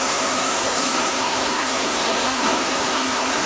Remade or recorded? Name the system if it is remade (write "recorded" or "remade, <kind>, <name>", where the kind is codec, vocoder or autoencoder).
remade, codec, SNAC